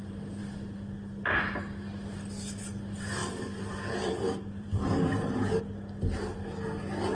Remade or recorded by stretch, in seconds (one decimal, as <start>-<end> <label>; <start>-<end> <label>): 0.0-3.2 recorded; 3.2-5.6 remade; 5.6-7.1 recorded